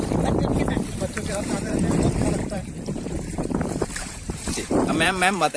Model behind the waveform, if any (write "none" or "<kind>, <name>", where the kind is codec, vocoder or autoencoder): vocoder, BigVGAN v2